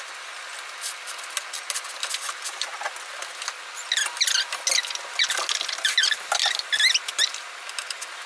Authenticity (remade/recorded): recorded